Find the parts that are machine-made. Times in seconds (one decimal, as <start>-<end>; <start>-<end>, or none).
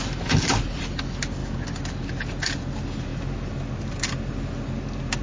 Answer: none